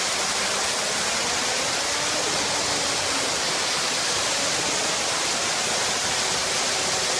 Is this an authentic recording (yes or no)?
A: yes